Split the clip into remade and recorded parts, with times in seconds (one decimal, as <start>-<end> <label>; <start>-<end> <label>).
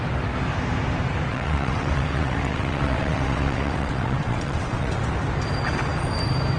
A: 0.0-1.3 recorded; 1.3-5.0 remade; 5.0-6.6 recorded